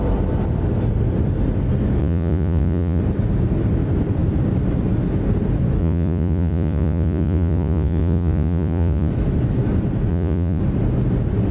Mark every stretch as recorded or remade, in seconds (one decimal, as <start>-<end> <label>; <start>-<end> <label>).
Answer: 0.0-2.0 recorded; 2.0-3.0 remade; 3.0-5.8 recorded; 5.8-9.1 remade; 9.1-10.1 recorded; 10.1-10.6 remade; 10.6-11.5 recorded